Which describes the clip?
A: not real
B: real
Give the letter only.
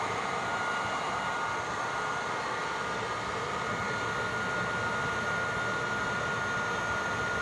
B